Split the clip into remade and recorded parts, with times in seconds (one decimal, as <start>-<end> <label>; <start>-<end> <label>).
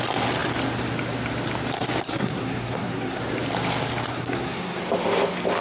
0.0-2.1 recorded; 2.1-3.2 remade; 3.2-4.1 recorded; 4.1-4.8 remade; 4.8-5.6 recorded